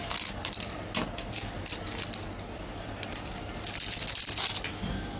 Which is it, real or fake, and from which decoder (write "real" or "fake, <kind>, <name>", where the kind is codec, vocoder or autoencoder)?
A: real